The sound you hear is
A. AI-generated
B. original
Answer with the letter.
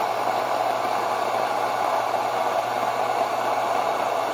B